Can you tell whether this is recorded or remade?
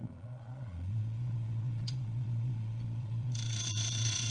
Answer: remade